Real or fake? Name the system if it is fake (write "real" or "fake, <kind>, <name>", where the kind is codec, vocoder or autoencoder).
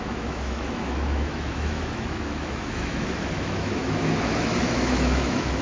fake, autoencoder, DAC-VAE